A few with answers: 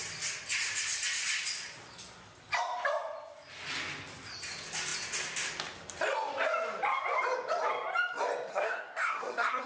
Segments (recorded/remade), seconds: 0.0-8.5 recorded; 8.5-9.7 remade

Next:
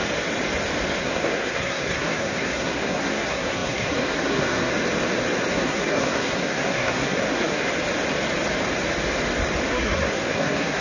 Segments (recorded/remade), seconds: 0.0-1.0 recorded; 1.0-4.7 remade; 4.7-5.5 recorded; 5.5-7.7 remade; 7.7-9.7 recorded; 9.7-10.8 remade

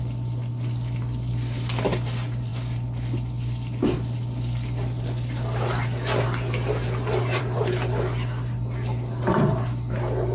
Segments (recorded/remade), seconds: 0.0-10.3 recorded

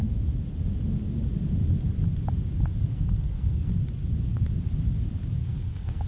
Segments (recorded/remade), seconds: 0.0-2.9 recorded; 2.9-3.7 remade; 3.7-5.4 recorded; 5.4-6.1 remade

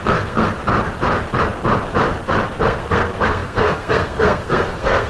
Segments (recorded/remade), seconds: 0.0-0.6 remade; 0.6-2.6 recorded; 2.6-5.1 remade